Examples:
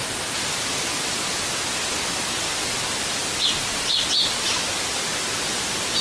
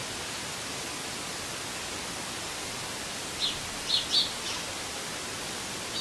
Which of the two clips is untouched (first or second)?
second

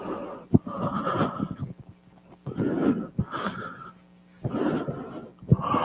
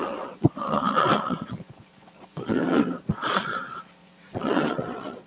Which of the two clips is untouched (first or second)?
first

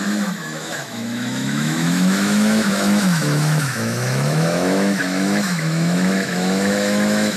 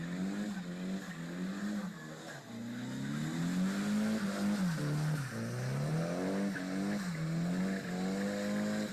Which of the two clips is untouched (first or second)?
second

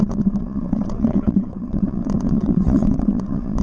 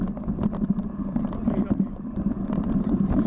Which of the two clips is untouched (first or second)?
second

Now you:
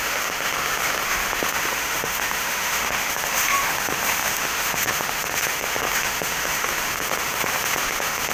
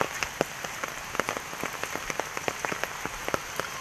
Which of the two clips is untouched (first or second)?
second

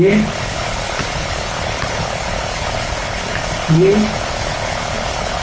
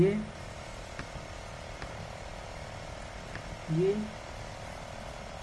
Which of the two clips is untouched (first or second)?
second